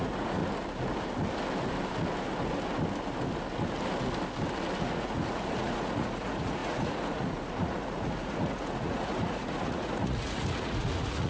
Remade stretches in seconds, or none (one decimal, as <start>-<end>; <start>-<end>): 0.0-0.4; 4.8-11.3